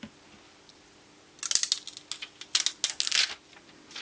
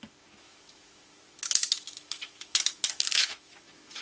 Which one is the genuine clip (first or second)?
first